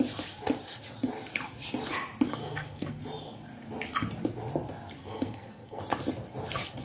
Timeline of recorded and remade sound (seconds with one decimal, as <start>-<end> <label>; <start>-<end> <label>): 0.0-2.4 recorded; 2.4-3.0 remade; 3.0-5.0 recorded; 5.0-5.8 remade; 5.8-6.8 recorded